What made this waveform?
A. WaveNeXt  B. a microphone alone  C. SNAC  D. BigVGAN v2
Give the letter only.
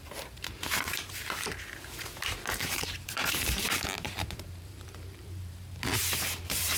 D